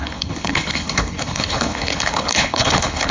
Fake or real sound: fake